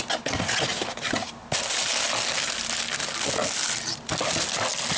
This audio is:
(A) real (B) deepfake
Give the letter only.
A